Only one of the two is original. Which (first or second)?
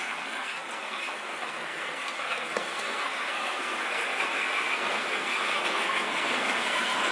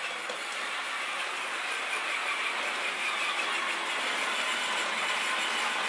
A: second